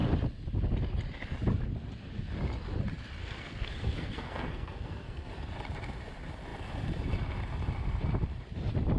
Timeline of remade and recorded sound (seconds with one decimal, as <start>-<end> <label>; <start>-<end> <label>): 0.0-3.2 recorded; 3.2-5.3 remade; 5.3-9.0 recorded